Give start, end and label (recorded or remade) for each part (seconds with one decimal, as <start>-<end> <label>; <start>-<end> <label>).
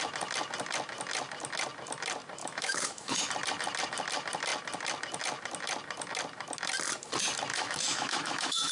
0.0-2.4 recorded; 2.4-3.2 remade; 3.2-7.5 recorded; 7.5-8.7 remade